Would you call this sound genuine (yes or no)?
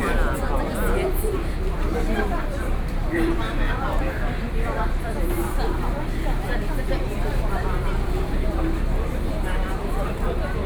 no